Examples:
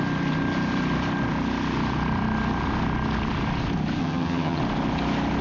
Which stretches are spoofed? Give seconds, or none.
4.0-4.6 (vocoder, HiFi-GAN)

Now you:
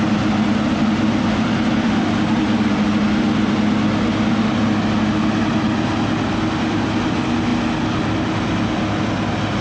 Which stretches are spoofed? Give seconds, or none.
none

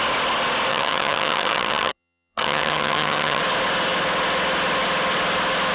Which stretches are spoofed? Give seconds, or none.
0.7-3.4 (vocoder, HiFi-GAN)

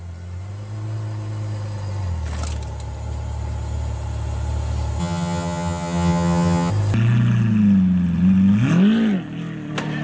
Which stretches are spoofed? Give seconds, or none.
5.0-6.7 (vocoder, HiFi-GAN)

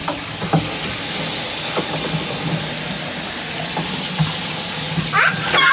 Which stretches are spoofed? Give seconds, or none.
none

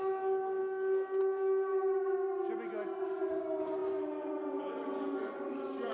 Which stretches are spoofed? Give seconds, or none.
none

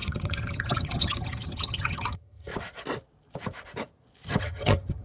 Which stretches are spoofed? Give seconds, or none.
0.0-2.5 (vocoder, HiFi-GAN); 4.4-5.0